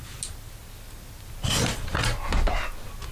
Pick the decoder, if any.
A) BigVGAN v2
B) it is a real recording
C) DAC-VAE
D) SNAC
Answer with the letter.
B